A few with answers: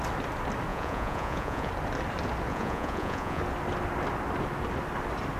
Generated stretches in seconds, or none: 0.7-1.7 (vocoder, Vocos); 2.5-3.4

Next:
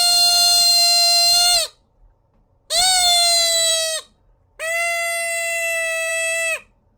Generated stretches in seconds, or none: none

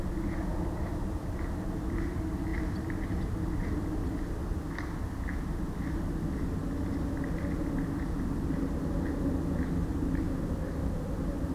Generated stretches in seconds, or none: none

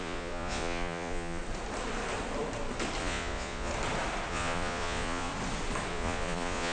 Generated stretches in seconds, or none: 0.0-1.4 (vocoder, Vocos); 3.0-3.7; 4.3-5.3; 5.9-6.7

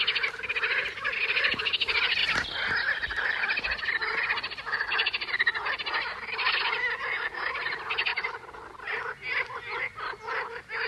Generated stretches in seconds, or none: none

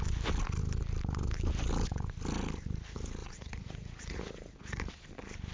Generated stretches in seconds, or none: 3.2-4.9 (vocoder, Vocos)

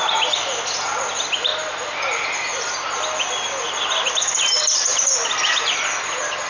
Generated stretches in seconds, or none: none

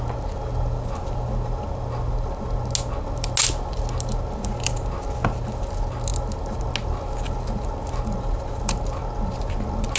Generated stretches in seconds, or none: none